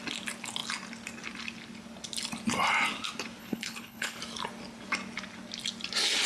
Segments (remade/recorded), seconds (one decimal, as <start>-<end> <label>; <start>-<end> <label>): 0.0-3.4 recorded; 3.4-4.2 remade; 4.2-6.3 recorded